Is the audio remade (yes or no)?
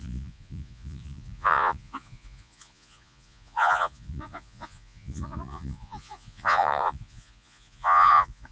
yes